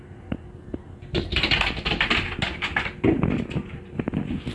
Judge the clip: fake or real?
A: real